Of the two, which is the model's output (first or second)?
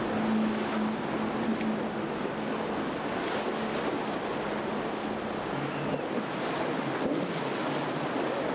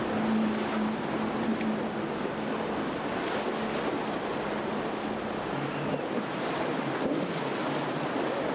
second